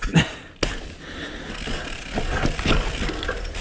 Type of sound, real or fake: real